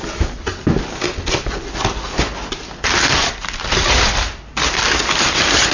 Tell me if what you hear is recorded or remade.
recorded